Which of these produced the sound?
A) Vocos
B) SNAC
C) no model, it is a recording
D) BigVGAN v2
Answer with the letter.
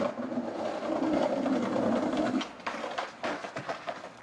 C